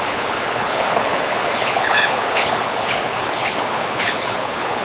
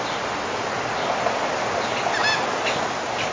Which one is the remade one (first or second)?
first